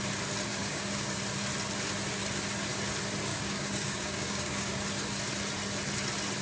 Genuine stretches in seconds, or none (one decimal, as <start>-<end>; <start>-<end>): 0.0-0.5; 1.2-3.3; 4.8-6.4